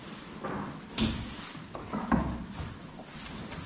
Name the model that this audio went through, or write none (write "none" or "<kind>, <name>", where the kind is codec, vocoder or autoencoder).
none